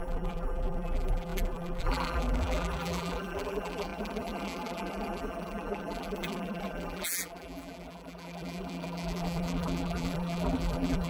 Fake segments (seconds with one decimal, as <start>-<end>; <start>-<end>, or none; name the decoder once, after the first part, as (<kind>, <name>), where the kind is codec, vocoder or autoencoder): 0.0-11.1 (vocoder, BigVGAN v2)